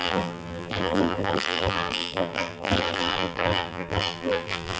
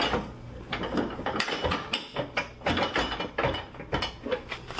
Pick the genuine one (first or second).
second